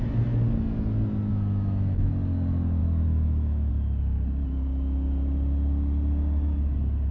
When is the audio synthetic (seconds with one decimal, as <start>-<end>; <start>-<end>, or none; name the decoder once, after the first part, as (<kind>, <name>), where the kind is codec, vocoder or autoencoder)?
1.3-2.1 (autoencoder, DAC-VAE); 2.8-3.7